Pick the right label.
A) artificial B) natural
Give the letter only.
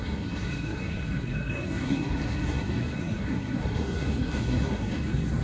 A